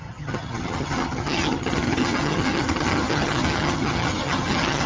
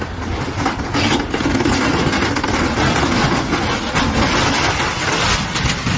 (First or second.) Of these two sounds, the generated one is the first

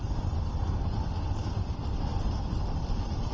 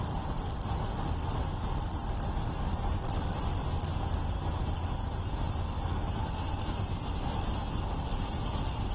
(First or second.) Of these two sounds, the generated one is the first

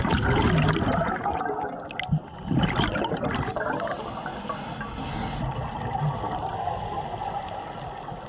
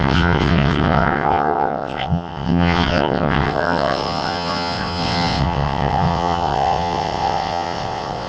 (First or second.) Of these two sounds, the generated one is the second